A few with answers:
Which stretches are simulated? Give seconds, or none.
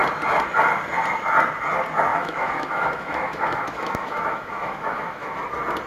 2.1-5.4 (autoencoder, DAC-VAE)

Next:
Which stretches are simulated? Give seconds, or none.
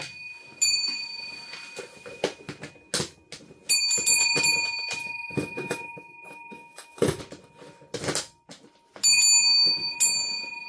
5.0-7.2 (autoencoder, DAC-VAE)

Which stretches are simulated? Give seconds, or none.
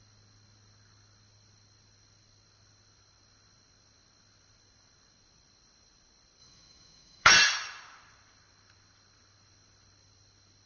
6.4-7.3 (autoencoder, DAC-VAE)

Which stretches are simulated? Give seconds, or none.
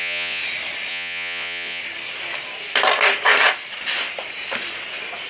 0.0-0.4 (vocoder, Vocos); 0.9-1.8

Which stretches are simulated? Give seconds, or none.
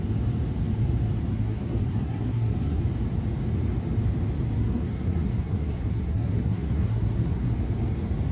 1.3-2.8 (codec, SNAC); 4.6-7.5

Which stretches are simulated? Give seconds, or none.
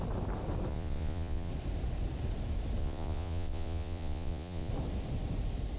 0.7-1.5 (vocoder, Vocos); 2.8-4.7